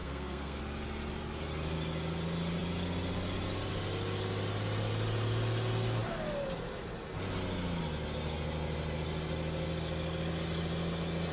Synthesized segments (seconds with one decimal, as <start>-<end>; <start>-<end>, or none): 0.0-0.6